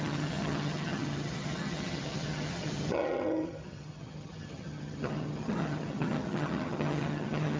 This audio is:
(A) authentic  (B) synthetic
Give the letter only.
B